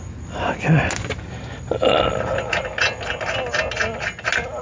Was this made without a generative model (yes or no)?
yes